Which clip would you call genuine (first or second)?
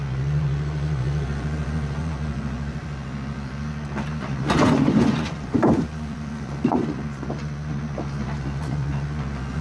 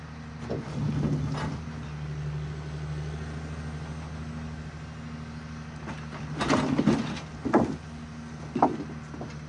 second